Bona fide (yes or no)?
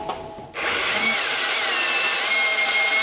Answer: yes